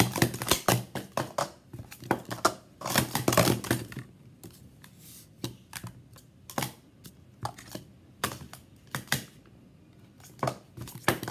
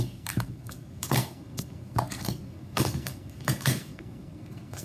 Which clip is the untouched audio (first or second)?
first